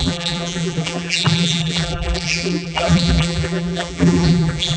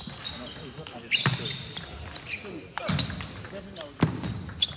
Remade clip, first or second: first